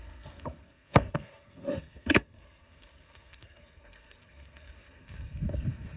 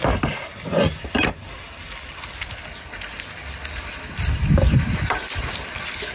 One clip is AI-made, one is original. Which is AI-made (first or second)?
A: first